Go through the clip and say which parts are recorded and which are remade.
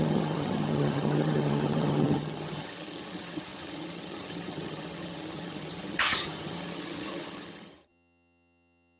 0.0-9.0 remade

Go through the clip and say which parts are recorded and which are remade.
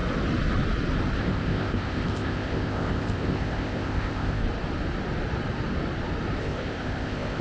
0.0-1.2 recorded; 1.2-4.4 remade; 4.4-6.4 recorded; 6.4-7.4 remade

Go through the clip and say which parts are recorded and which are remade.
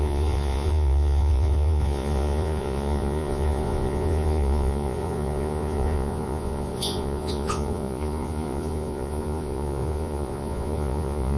0.0-11.4 remade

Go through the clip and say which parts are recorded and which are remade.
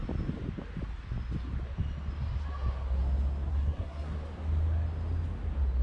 0.0-3.5 recorded; 3.5-4.2 remade; 4.2-5.8 recorded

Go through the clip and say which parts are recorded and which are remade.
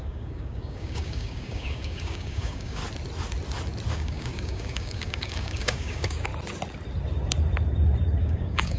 0.0-2.8 remade; 2.8-3.9 recorded; 3.9-6.3 remade; 6.3-8.2 recorded; 8.2-8.8 remade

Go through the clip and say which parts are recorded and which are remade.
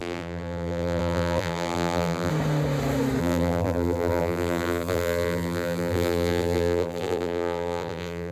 0.0-2.3 remade; 2.3-3.2 recorded; 3.2-8.3 remade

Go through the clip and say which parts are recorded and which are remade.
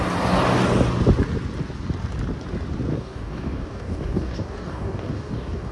0.0-2.9 recorded; 2.9-5.7 remade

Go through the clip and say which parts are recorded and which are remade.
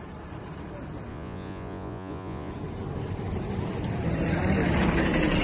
0.0-1.1 recorded; 1.1-2.5 remade; 2.5-5.4 recorded